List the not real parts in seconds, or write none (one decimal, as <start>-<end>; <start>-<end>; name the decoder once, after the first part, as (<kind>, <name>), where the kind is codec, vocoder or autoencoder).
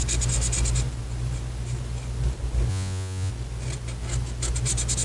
2.7-3.3 (vocoder, Vocos)